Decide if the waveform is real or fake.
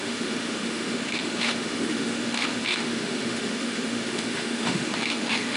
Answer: fake